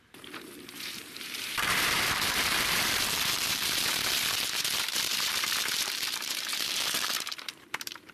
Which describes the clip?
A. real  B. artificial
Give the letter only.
B